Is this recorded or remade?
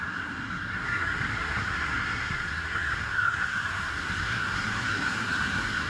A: remade